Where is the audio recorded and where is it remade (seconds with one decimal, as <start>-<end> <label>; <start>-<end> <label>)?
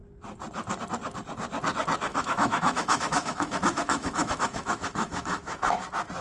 0.0-2.1 recorded; 2.1-5.8 remade; 5.8-6.2 recorded